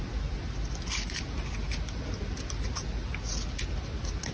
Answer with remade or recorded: recorded